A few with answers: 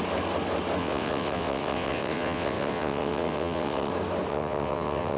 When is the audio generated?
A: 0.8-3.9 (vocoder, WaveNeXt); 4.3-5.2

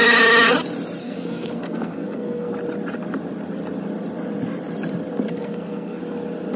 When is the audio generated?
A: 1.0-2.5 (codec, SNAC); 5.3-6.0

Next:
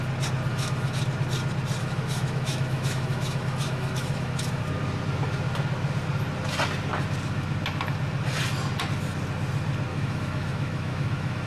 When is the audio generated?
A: 0.5-1.0 (autoencoder, DAC-VAE); 1.8-4.6; 9.9-11.5

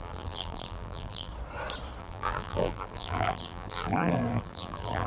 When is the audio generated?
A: 0.0-1.3 (vocoder, BigVGAN v2); 2.0-5.1